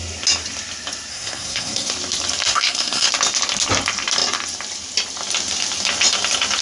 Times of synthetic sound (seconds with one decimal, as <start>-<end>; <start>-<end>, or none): 1.1-1.9; 2.5-3.1